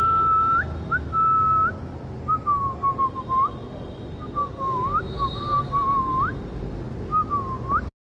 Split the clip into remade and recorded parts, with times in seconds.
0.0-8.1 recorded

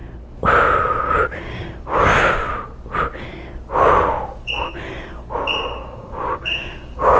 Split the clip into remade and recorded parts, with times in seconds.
0.0-1.0 recorded; 1.0-2.4 remade; 2.4-5.8 recorded; 5.8-7.2 remade

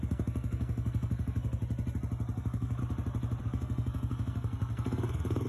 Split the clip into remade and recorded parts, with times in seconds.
0.0-1.6 remade; 1.6-2.4 recorded; 2.4-2.8 remade; 2.8-3.4 recorded; 3.4-5.5 remade